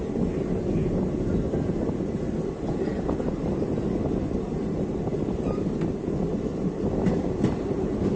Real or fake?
real